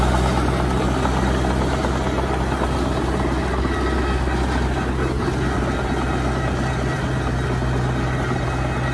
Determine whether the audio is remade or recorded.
recorded